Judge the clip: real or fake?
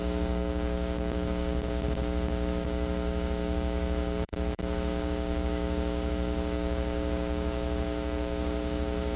fake